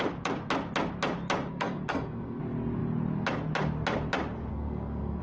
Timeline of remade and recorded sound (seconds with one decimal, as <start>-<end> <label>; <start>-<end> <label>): 0.0-1.5 recorded; 1.5-2.4 remade; 2.4-4.5 recorded; 4.5-5.2 remade

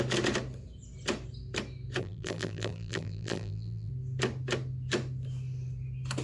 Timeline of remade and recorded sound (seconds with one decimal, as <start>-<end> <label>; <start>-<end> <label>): 0.0-2.0 recorded; 2.0-3.9 remade; 3.9-6.2 recorded

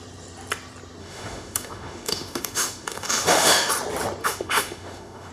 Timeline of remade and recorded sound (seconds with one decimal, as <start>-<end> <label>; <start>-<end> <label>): 0.0-1.0 recorded; 1.0-3.7 remade; 3.7-4.2 recorded; 4.2-5.3 remade

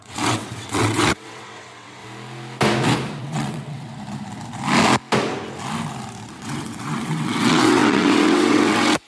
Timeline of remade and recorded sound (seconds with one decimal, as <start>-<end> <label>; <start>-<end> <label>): 0.0-2.0 remade; 2.0-3.2 recorded; 3.2-3.9 remade; 3.9-6.3 recorded; 6.3-9.1 remade